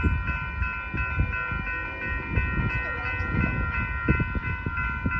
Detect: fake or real real